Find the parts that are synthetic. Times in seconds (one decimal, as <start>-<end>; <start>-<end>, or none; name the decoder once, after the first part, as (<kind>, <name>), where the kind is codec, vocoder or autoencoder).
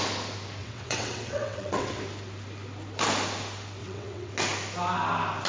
0.6-2.0 (vocoder, WaveNeXt); 3.8-4.3